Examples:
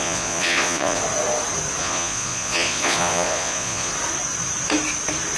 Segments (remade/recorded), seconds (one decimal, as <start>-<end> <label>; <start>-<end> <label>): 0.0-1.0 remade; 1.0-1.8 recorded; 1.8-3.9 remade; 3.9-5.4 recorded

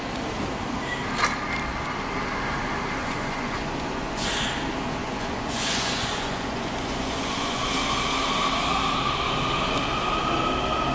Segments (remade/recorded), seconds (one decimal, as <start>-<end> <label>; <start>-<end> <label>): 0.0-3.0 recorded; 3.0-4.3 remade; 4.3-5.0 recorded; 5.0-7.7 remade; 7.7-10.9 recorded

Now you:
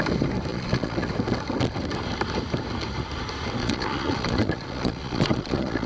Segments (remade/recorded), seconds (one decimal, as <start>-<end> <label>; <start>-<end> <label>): 0.0-0.5 recorded; 0.5-1.1 remade; 1.1-3.6 recorded; 3.6-5.9 remade